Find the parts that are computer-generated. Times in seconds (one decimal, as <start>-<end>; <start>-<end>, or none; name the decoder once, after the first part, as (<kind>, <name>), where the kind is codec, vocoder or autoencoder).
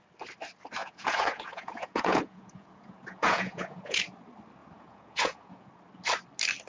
0.8-4.0 (vocoder, Vocos); 4.6-5.7